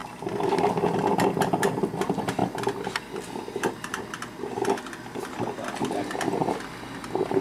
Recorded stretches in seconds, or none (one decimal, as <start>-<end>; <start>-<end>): 0.0-7.4